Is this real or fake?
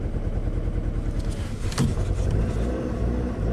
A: real